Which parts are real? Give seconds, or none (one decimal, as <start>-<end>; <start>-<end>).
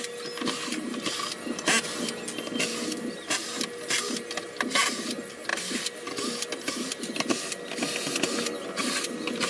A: 0.0-8.8